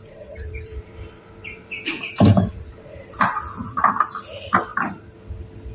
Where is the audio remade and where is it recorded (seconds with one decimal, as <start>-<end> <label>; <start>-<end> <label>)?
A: 0.0-3.4 remade; 3.4-5.7 recorded